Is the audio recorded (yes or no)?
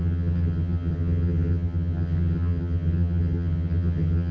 no